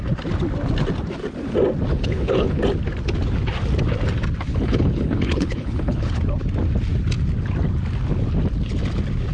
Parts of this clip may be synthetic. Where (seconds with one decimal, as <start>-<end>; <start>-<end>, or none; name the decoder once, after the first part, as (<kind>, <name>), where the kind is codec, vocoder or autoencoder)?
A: 1.9-2.6 (codec, HILCodec); 4.5-6.2